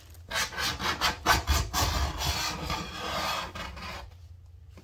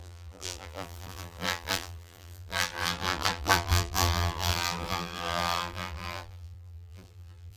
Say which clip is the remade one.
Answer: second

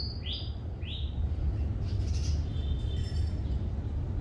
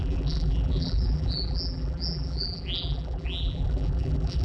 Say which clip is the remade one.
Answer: second